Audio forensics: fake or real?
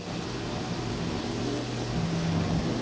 real